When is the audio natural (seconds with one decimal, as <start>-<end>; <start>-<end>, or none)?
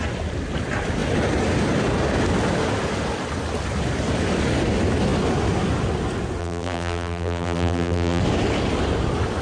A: 0.0-6.4; 8.2-9.4